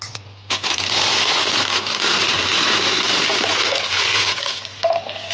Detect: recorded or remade recorded